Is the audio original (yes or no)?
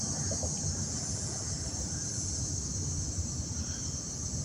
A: yes